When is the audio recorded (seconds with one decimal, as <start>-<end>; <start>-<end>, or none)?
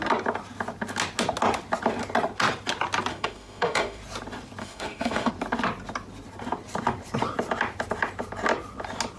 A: 0.0-3.1; 4.0-4.6; 5.3-9.2